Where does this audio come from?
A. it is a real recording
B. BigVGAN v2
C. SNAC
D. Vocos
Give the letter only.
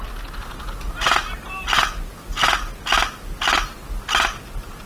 A